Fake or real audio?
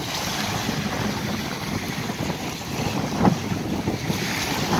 real